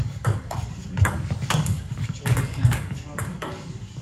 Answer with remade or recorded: remade